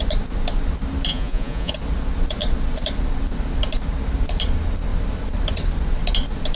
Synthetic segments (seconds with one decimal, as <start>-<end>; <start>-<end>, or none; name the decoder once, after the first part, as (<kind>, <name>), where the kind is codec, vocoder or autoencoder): 1.1-1.7 (vocoder, Vocos)